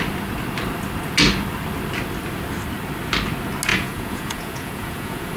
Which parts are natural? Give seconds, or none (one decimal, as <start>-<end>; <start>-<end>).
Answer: 0.0-3.7